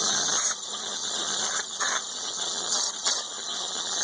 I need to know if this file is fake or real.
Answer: fake